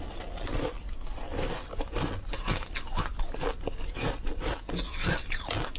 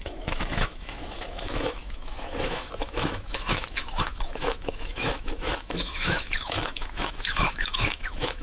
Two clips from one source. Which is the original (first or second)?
first